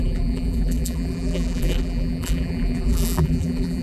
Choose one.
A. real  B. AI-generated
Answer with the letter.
B